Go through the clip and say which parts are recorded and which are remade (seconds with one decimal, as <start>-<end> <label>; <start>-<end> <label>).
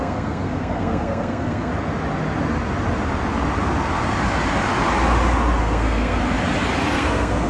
0.0-1.7 remade; 1.7-5.6 recorded; 5.6-6.2 remade; 6.2-6.9 recorded; 6.9-7.5 remade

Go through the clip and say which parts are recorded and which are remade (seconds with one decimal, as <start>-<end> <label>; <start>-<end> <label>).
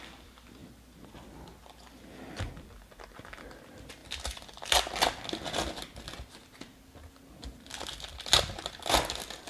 0.0-9.5 recorded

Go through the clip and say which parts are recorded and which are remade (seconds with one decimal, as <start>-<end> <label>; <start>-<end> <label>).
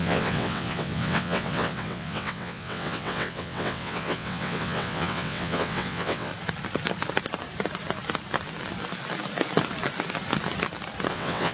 0.0-6.3 remade; 6.3-11.1 recorded; 11.1-11.5 remade